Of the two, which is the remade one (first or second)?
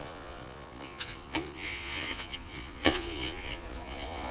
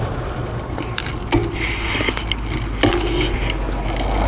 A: first